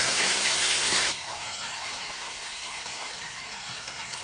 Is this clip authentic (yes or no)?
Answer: no